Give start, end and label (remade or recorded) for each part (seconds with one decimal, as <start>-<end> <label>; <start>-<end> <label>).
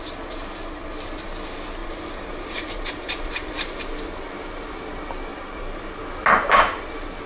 0.0-1.8 recorded; 1.8-3.8 remade; 3.8-5.3 recorded; 5.3-5.8 remade; 5.8-7.3 recorded